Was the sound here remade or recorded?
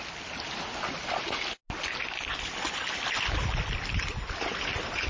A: recorded